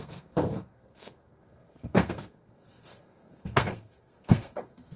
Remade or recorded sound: remade